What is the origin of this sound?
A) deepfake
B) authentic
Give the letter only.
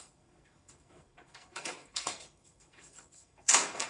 A